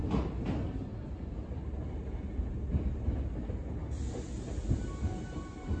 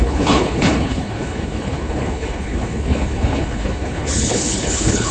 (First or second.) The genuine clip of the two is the first